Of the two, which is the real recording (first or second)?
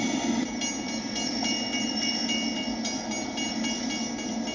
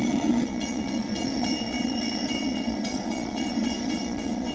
first